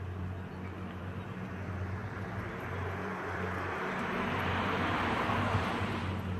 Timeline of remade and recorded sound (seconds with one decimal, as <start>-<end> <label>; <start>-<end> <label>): 0.0-2.0 recorded; 2.0-5.8 remade; 5.8-6.4 recorded